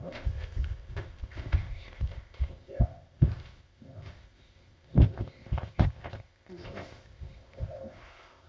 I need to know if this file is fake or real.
fake